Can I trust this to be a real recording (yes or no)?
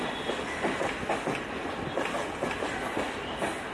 yes